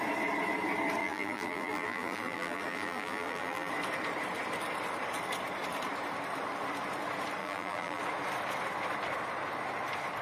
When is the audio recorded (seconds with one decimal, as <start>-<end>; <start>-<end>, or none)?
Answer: 0.0-1.0; 3.7-7.4; 8.0-10.2